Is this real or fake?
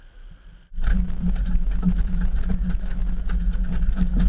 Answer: real